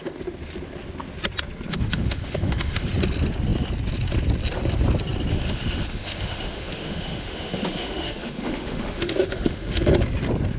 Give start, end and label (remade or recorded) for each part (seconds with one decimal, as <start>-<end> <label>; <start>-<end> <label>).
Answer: 0.0-1.7 recorded; 1.7-2.9 remade; 2.9-5.3 recorded; 5.3-9.9 remade; 9.9-10.6 recorded